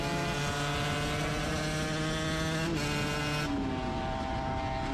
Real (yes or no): yes